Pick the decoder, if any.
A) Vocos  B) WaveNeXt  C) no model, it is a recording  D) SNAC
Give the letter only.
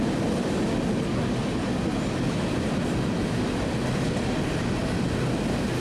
C